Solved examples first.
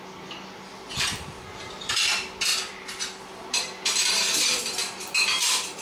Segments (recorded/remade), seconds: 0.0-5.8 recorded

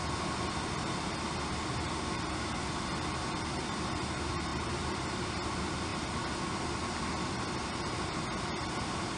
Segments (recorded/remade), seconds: 0.0-4.5 recorded; 4.5-5.0 remade; 5.0-9.2 recorded

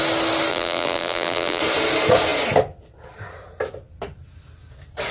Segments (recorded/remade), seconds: 0.0-0.5 recorded; 0.5-1.6 remade; 1.6-5.1 recorded

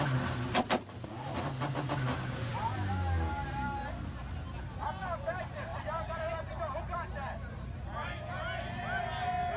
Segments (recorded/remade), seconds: 0.0-9.6 recorded

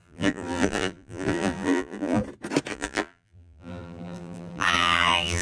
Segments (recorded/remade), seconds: 0.0-2.2 remade; 2.2-2.7 recorded; 2.7-5.4 remade

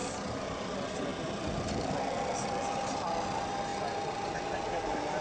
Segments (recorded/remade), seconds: 0.0-0.6 remade; 0.6-1.1 recorded; 1.1-2.8 remade; 2.8-5.2 recorded

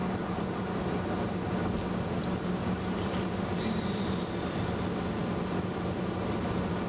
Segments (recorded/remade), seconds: 0.0-0.6 remade; 0.6-2.2 recorded; 2.2-4.3 remade; 4.3-6.9 recorded